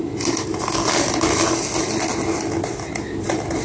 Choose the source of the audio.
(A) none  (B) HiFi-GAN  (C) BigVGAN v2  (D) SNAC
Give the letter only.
A